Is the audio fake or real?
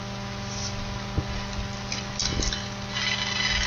real